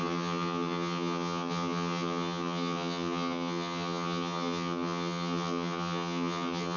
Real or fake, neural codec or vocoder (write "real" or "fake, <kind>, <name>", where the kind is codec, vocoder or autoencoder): fake, vocoder, HiFi-GAN